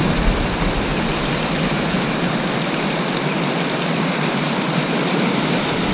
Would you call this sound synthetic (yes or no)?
yes